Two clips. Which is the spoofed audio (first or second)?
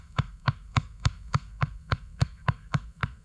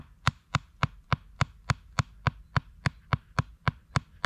first